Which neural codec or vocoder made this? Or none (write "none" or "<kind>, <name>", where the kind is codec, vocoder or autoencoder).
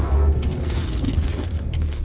codec, SNAC